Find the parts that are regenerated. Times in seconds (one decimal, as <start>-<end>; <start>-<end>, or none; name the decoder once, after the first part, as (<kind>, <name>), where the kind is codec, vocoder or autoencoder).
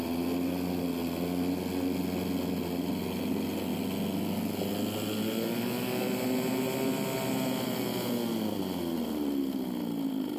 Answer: none